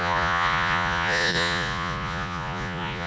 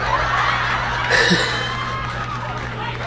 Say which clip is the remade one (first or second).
first